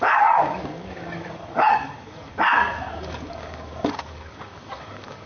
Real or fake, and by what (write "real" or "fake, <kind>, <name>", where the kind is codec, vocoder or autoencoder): fake, codec, DAC